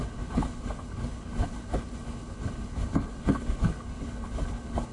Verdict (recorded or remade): remade